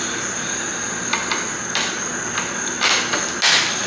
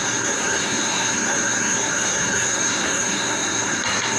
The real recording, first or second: first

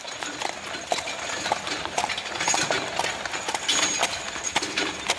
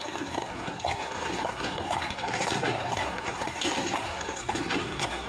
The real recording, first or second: first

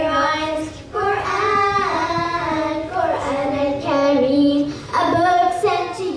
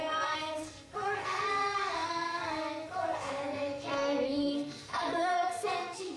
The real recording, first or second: first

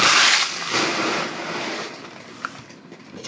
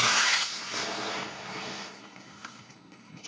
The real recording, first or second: first